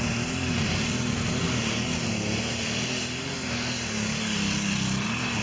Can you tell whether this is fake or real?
real